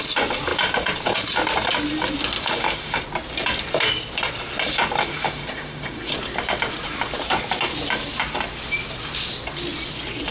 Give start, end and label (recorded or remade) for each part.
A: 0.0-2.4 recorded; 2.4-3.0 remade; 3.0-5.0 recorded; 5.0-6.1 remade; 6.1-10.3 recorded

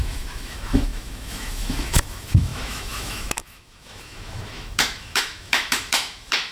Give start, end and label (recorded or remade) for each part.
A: 0.0-6.5 remade